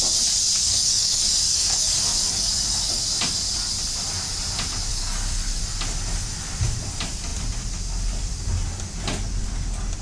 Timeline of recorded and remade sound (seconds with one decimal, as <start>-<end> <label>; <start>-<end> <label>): 0.0-0.6 recorded; 0.6-3.0 remade; 3.0-4.9 recorded; 4.9-5.6 remade; 5.6-10.0 recorded